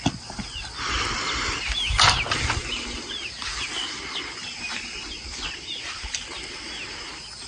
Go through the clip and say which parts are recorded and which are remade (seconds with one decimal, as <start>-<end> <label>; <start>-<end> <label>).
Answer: 0.0-7.5 recorded

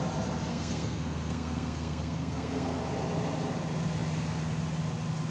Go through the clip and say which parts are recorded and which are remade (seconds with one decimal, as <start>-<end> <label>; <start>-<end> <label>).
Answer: 0.0-0.5 recorded; 0.5-2.8 remade; 2.8-5.3 recorded

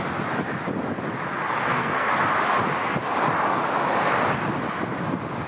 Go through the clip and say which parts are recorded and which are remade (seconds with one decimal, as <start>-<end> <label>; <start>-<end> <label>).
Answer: 0.0-1.5 recorded; 1.5-2.1 remade; 2.1-5.5 recorded

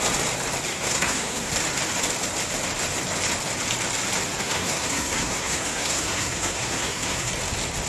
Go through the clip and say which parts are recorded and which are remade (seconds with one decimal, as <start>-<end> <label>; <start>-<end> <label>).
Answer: 0.0-0.7 recorded; 0.7-1.5 remade; 1.5-4.4 recorded; 4.4-7.3 remade; 7.3-7.9 recorded

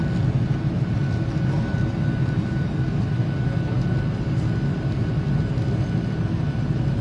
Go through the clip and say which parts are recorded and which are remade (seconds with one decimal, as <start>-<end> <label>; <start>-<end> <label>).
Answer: 0.0-7.0 recorded

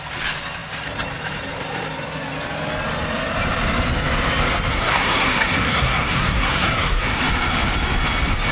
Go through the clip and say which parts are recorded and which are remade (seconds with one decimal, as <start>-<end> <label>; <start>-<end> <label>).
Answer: 0.0-4.7 recorded; 4.7-7.2 remade; 7.2-8.5 recorded

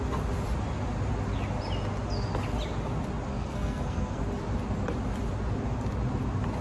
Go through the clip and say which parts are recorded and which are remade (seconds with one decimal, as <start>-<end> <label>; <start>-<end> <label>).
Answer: 0.0-3.3 recorded; 3.3-4.2 remade; 4.2-6.6 recorded